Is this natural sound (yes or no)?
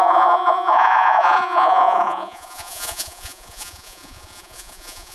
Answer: no